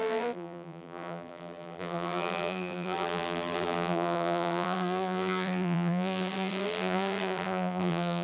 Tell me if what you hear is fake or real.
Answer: fake